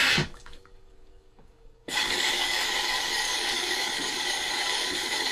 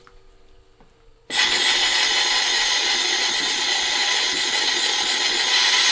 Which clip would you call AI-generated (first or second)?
first